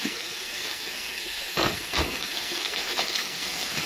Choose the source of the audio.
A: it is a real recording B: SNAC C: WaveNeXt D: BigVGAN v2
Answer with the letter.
B